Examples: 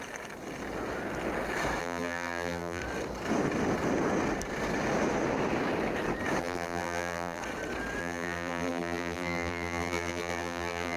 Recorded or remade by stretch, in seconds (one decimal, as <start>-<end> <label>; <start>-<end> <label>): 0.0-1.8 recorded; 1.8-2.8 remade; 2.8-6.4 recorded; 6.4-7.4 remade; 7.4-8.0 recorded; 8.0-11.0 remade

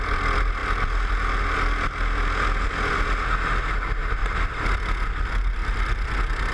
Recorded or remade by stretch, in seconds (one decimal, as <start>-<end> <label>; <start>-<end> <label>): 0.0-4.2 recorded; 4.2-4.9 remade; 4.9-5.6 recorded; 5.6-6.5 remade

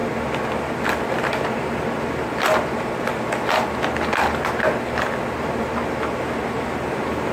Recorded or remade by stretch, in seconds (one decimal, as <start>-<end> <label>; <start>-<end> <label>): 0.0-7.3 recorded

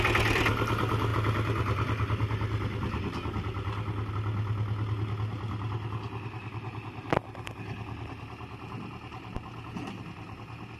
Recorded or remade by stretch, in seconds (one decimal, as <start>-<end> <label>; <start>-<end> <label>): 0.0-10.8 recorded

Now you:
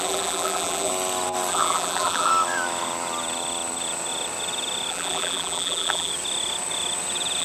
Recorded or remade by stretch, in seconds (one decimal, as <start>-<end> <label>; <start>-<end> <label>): 0.0-0.9 remade; 0.9-1.5 recorded; 1.5-2.3 remade; 2.3-4.9 recorded; 4.9-6.1 remade; 6.1-7.4 recorded

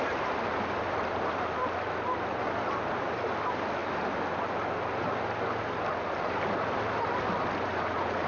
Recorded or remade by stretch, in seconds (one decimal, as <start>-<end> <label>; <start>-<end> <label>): 0.0-3.8 remade; 3.8-5.9 recorded; 5.9-8.3 remade